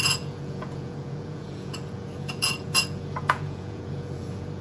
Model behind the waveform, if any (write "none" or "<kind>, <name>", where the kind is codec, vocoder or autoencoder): vocoder, Vocos